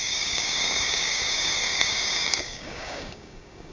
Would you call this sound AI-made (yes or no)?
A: yes